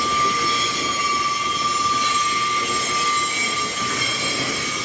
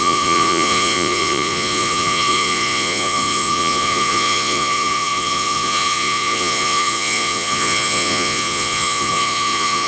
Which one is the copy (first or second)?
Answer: second